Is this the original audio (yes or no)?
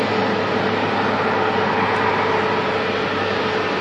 yes